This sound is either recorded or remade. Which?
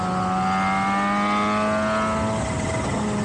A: recorded